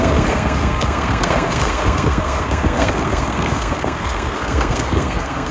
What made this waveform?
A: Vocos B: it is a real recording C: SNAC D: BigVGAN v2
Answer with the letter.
C